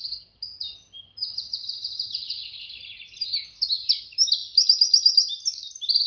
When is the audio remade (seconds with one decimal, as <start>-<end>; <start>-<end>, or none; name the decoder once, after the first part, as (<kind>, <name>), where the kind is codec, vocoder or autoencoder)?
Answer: none